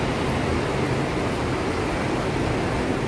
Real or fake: real